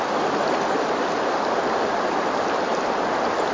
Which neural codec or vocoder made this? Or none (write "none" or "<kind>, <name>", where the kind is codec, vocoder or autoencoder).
none